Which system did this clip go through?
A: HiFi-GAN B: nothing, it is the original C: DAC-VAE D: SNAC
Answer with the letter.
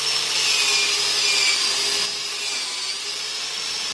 B